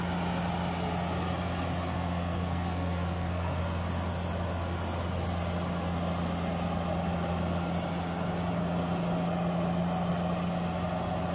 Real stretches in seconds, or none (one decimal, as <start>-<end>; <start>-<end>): 0.0-1.8; 3.6-11.3